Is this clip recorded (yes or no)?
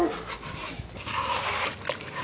yes